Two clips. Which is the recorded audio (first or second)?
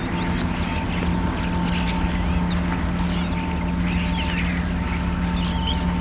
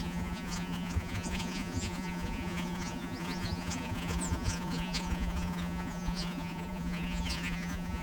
first